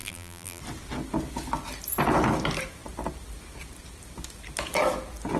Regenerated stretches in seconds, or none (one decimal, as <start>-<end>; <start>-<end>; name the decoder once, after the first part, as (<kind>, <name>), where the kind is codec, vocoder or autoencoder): 0.0-0.6 (vocoder, BigVGAN v2)